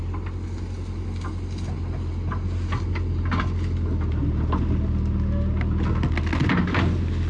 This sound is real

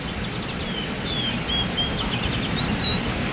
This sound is real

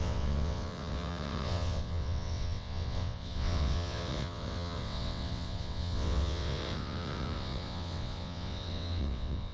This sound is fake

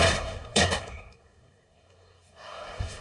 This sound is fake